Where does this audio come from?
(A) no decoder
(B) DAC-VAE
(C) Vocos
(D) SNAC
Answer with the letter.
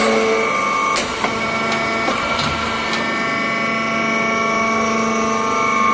A